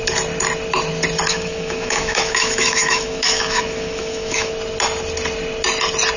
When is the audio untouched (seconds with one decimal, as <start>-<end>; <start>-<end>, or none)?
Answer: 0.0-1.3; 4.5-6.2